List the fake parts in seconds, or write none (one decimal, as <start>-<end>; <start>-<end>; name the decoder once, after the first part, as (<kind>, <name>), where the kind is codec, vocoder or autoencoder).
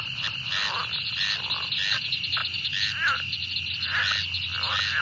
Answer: none